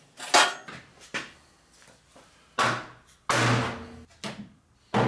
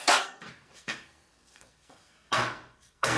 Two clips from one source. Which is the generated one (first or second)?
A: second